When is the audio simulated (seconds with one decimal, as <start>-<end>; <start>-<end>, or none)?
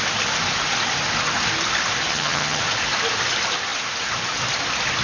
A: 2.1-2.6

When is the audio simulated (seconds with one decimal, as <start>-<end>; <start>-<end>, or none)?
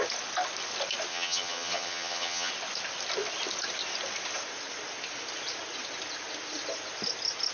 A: 1.1-2.5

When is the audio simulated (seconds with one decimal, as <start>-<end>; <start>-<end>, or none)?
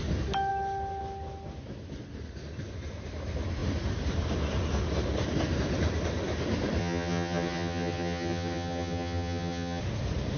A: 6.8-9.8